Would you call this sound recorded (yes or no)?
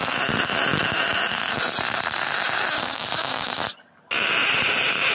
yes